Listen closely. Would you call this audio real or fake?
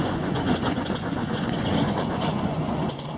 fake